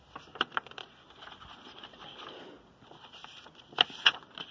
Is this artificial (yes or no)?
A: no